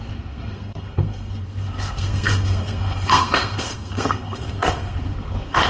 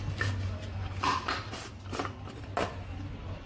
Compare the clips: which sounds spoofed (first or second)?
first